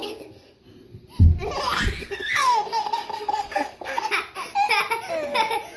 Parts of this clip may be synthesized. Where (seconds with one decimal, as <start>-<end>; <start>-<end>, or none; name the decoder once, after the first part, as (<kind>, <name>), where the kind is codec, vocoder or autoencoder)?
0.0-0.6 (codec, SNAC); 2.0-4.1